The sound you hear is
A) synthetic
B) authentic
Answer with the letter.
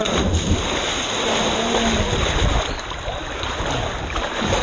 B